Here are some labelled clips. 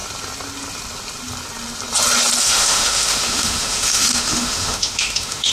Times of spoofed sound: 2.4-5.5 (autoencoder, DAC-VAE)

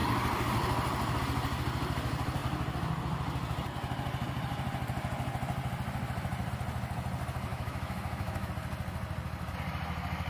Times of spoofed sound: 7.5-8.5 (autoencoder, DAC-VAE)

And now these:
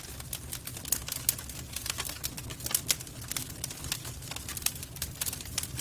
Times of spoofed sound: 4.5-5.8 (vocoder, BigVGAN v2)